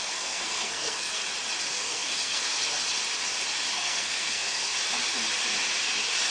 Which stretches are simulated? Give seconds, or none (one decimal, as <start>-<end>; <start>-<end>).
0.0-1.2; 1.7-2.6; 3.7-4.7